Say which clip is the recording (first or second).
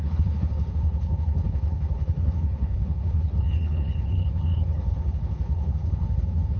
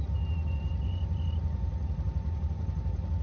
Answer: second